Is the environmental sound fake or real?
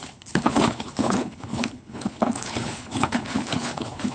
fake